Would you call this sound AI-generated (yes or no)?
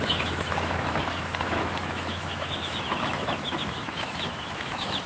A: yes